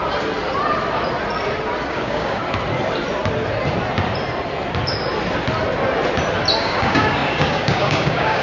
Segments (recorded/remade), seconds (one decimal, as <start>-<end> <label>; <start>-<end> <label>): 0.0-1.9 recorded; 1.9-2.4 remade; 2.4-6.6 recorded; 6.6-8.4 remade

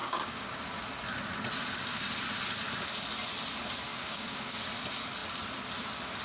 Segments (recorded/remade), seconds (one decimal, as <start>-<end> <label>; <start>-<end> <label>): 0.0-0.6 remade; 0.6-3.9 recorded; 3.9-4.5 remade; 4.5-6.2 recorded

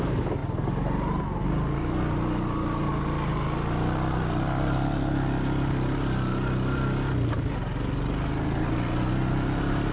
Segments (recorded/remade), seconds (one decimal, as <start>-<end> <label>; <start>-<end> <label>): 0.0-9.9 recorded

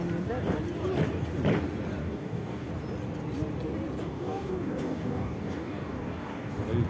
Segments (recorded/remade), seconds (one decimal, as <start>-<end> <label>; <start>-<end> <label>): 0.0-2.0 recorded; 2.0-2.7 remade; 2.7-4.0 recorded; 4.0-6.5 remade; 6.5-6.9 recorded

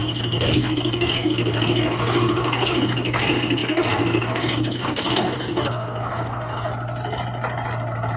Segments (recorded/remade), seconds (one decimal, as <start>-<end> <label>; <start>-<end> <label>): 0.0-6.7 remade; 6.7-8.2 recorded

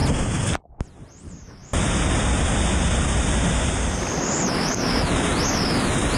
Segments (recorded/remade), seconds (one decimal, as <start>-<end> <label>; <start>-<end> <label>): 0.0-6.2 recorded

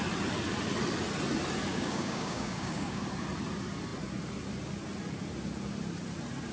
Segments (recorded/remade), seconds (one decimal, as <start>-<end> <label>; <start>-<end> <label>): 0.0-1.7 recorded; 1.7-3.0 remade; 3.0-6.5 recorded

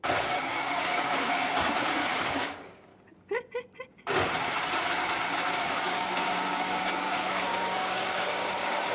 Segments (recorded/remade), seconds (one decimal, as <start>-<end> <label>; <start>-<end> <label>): 0.0-2.9 remade; 2.9-5.5 recorded; 5.5-8.9 remade